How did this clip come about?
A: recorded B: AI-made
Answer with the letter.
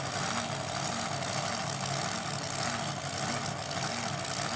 A